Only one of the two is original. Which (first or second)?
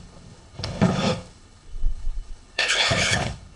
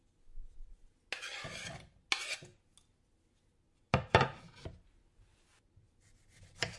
second